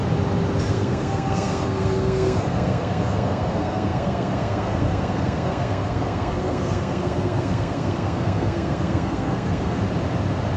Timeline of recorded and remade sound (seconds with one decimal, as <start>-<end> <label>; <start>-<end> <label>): 0.0-0.7 recorded; 0.7-9.8 remade; 9.8-10.6 recorded